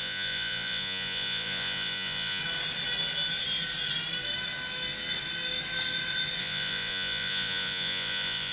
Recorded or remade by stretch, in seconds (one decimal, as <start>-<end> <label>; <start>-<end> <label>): 0.0-2.4 remade; 2.4-6.4 recorded; 6.4-8.5 remade